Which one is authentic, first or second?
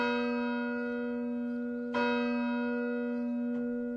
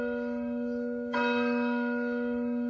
first